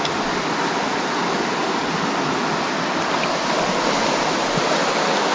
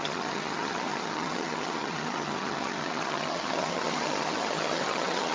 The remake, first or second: second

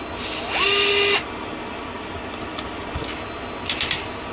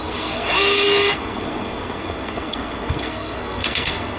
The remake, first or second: second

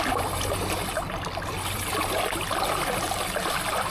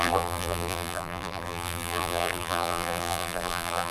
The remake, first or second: second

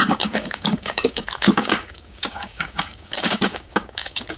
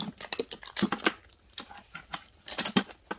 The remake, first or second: first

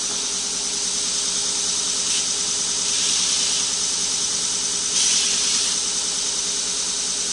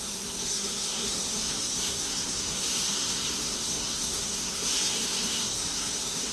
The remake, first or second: second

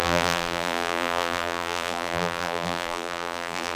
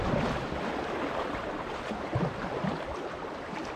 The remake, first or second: first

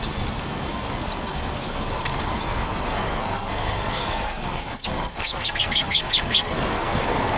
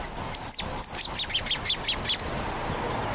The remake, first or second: first